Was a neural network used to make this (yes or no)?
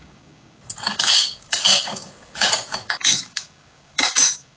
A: yes